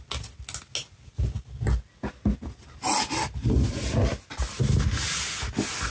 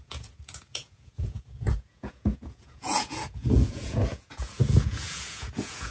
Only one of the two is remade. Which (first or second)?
second